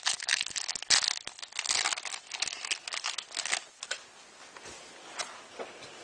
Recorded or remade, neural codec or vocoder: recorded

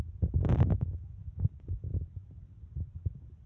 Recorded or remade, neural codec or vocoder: recorded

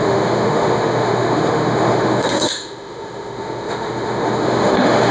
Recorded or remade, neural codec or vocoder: remade, autoencoder, DAC-VAE